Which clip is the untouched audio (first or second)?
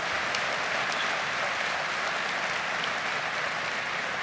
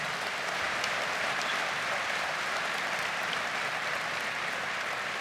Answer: first